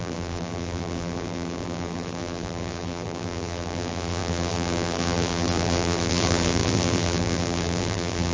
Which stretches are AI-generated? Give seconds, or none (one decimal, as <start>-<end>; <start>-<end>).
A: 0.0-8.3